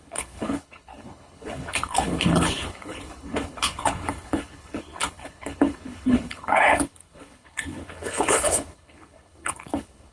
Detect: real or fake fake